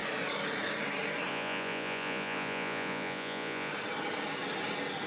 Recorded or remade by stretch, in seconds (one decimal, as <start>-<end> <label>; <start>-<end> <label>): 0.0-1.3 recorded; 1.3-3.7 remade; 3.7-5.1 recorded